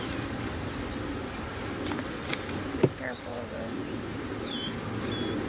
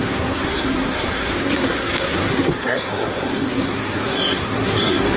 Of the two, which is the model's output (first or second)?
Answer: second